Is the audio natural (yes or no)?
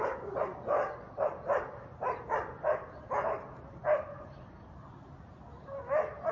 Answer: yes